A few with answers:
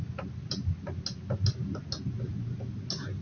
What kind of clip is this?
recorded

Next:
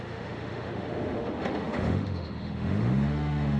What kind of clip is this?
remade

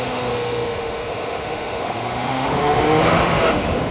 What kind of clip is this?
remade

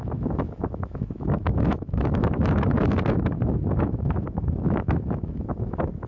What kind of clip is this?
remade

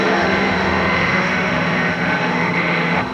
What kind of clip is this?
remade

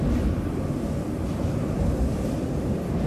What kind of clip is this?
recorded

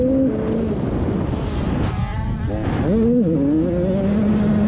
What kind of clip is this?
recorded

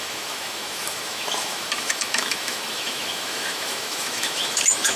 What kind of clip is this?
remade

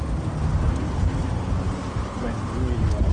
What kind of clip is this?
recorded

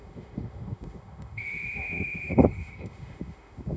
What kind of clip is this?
remade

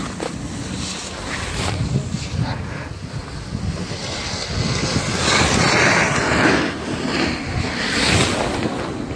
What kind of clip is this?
recorded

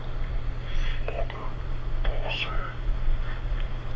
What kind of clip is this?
recorded